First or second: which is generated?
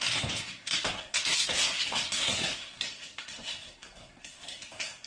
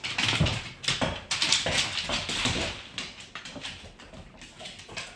first